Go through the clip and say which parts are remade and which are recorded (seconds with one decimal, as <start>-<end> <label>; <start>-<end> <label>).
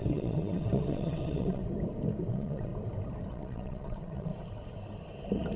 0.0-1.6 remade; 1.6-2.3 recorded; 2.3-2.7 remade; 2.7-3.3 recorded; 3.3-4.3 remade; 4.3-5.6 recorded